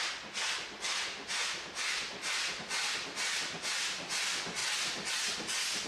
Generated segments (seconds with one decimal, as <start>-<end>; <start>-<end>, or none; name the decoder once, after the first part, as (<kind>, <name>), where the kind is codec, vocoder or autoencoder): none